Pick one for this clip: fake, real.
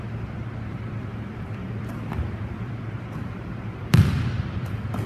fake